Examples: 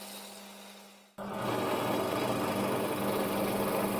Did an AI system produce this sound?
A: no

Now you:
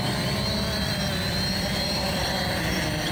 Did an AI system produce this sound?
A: yes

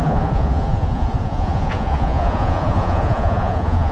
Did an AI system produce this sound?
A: yes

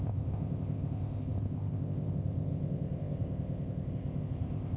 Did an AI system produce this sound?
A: yes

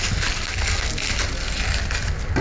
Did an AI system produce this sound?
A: no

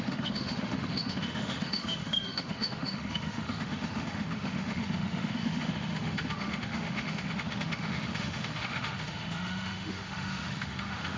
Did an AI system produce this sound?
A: yes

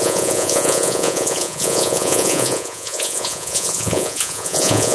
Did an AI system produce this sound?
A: yes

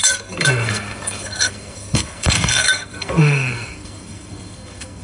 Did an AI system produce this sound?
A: yes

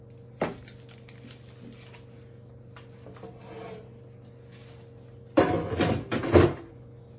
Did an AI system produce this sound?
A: no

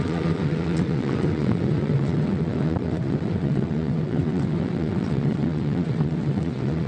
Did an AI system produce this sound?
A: yes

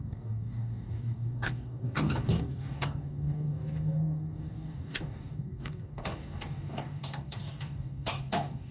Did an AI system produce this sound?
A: yes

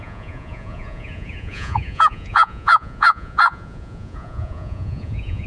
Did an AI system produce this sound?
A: yes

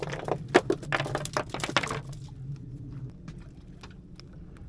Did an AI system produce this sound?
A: no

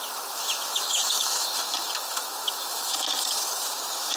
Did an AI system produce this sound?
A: yes